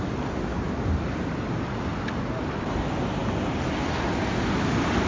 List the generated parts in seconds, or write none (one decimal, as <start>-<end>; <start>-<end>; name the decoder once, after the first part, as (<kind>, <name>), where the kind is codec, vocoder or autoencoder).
none